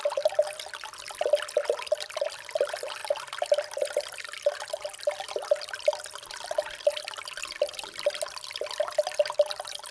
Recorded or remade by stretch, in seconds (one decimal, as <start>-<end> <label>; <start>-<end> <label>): 0.0-9.9 recorded